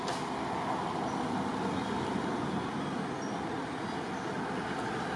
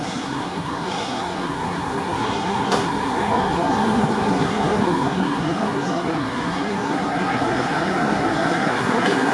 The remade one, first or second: second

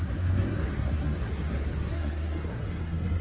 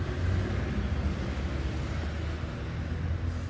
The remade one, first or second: first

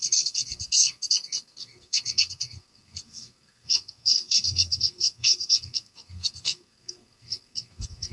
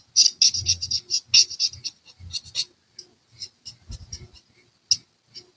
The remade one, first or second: first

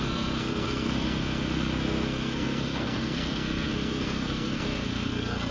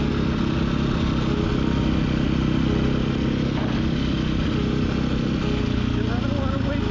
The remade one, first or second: first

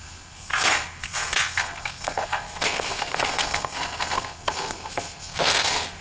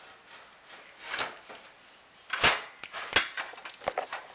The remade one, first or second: first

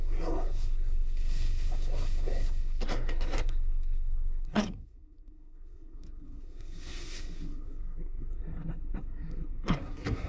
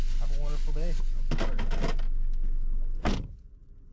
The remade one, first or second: first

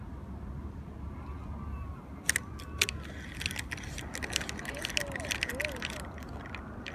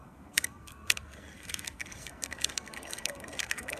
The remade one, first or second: second